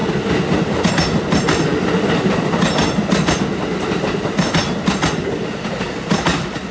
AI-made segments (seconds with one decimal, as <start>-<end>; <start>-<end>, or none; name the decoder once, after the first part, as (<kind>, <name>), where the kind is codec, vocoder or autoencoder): none